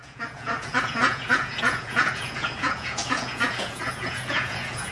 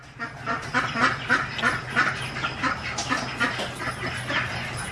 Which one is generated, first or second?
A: first